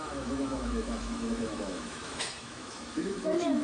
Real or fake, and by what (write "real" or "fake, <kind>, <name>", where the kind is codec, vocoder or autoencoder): fake, autoencoder, DAC-VAE